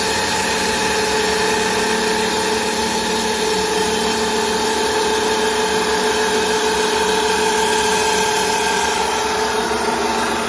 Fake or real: real